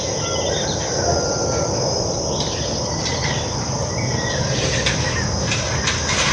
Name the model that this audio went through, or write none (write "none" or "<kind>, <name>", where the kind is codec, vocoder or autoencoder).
none